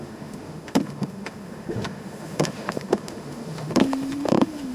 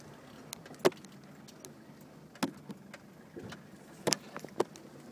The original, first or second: second